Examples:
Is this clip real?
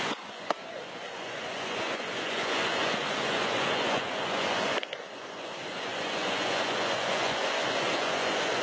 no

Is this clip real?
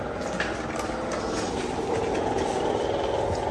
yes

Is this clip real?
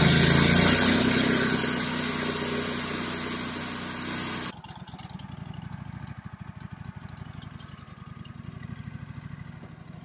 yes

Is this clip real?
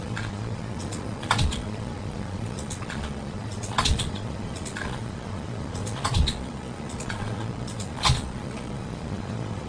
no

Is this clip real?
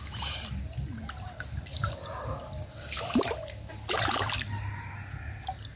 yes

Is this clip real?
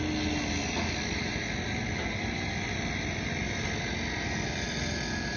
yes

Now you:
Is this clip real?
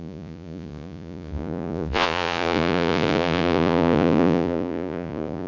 no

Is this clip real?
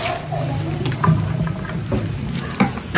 yes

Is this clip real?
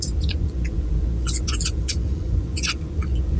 no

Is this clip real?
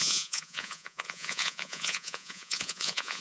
no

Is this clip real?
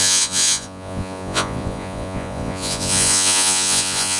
no